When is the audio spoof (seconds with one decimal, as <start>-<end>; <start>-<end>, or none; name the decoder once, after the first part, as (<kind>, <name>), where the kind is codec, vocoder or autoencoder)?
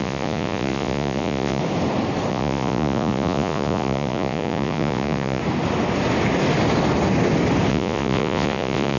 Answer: 0.0-1.6 (vocoder, Vocos); 2.3-5.4; 7.7-9.0